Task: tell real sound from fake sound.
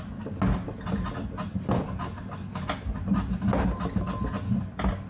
real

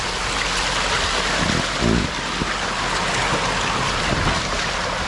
real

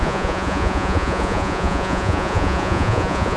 fake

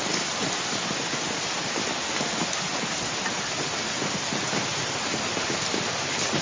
real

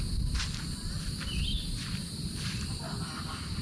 real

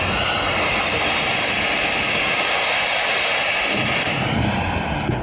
real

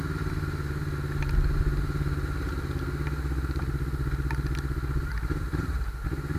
real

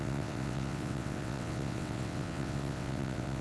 fake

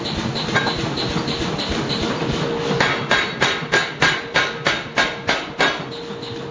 real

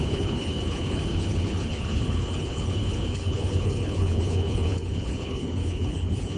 fake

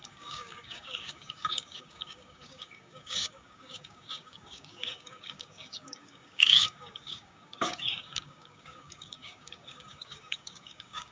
fake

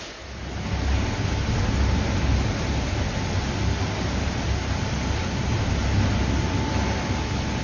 real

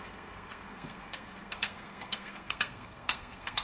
fake